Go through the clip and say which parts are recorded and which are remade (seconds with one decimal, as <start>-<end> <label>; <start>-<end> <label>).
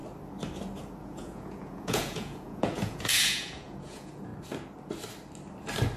0.0-1.0 recorded; 1.0-4.3 remade; 4.3-6.0 recorded